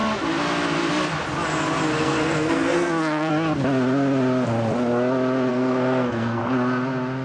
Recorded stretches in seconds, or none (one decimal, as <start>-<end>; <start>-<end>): 0.0-1.9; 3.3-5.5; 6.4-7.2